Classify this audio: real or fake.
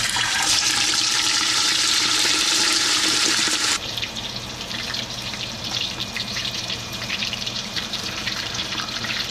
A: fake